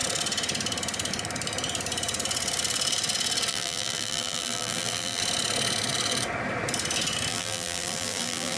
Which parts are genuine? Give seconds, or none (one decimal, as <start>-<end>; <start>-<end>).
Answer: 0.0-3.5; 5.2-7.3